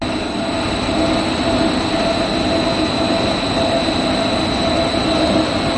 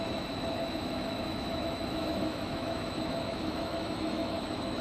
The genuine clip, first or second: first